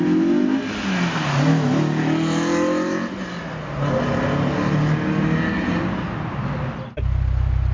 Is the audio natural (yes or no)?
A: yes